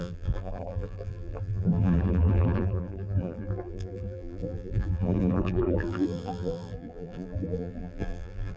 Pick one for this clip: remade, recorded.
remade